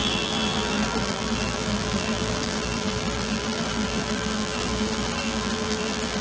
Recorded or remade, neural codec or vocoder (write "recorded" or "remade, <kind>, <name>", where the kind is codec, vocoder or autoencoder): remade, vocoder, BigVGAN v2